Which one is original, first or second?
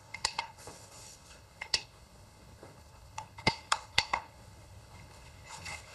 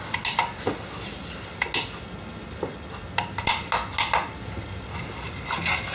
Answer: second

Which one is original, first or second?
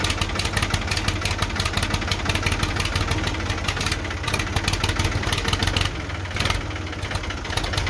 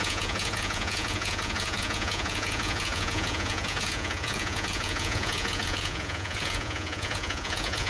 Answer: first